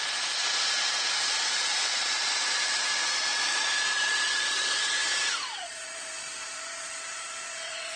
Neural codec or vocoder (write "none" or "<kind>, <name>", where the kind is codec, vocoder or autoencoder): vocoder, Vocos